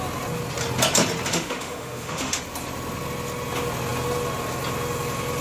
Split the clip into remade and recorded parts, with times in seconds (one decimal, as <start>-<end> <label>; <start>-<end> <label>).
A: 0.0-1.3 recorded; 1.3-2.4 remade; 2.4-5.4 recorded